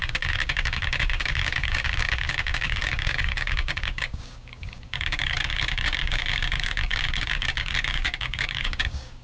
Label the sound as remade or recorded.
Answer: remade